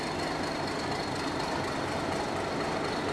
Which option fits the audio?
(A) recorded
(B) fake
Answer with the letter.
A